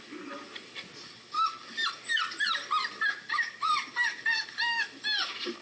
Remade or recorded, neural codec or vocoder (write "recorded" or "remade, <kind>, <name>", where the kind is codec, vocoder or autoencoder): recorded